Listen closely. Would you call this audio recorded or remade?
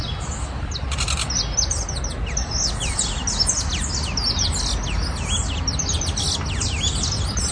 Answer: recorded